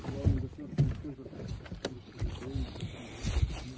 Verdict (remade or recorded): recorded